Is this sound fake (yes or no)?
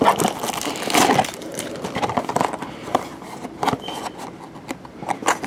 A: no